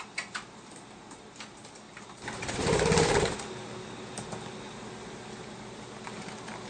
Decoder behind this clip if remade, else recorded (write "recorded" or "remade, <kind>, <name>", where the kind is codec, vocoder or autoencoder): recorded